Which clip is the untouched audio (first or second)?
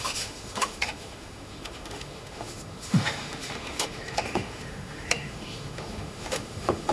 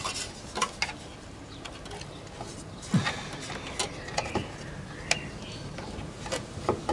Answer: second